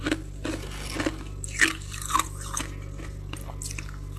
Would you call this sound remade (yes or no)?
no